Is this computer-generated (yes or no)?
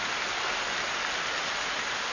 no